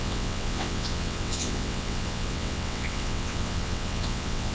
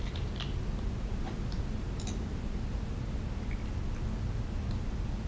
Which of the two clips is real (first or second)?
second